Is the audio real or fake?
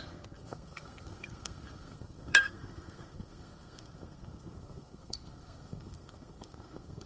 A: fake